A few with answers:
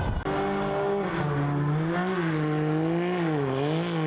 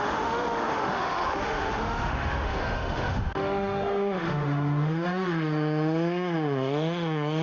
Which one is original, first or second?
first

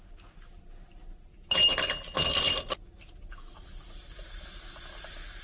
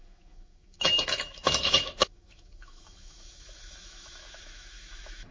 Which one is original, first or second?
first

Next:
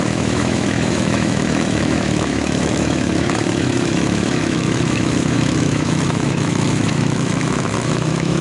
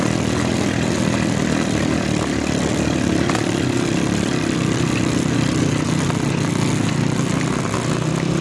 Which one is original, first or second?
second